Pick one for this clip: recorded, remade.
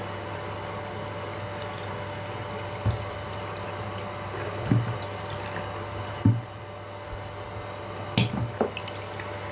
recorded